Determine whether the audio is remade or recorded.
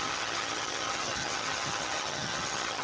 remade